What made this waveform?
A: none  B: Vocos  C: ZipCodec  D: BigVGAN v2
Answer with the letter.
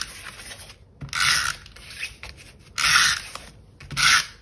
A